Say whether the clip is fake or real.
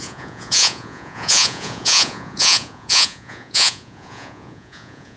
fake